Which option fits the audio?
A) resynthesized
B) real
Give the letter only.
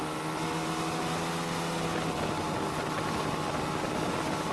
B